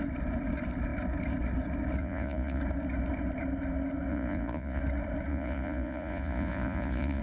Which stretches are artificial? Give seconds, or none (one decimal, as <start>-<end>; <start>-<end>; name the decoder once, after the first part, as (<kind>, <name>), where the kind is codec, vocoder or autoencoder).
2.0-2.6 (vocoder, Vocos); 4.1-4.8; 5.3-7.2